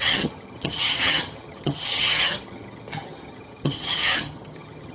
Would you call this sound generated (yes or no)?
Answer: yes